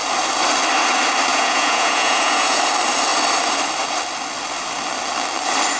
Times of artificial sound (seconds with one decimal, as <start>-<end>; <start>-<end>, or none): 1.3-2.6